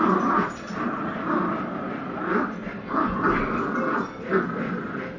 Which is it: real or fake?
real